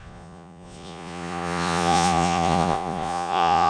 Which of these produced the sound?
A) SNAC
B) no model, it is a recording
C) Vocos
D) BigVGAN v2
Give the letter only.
C